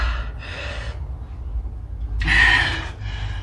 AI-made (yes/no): no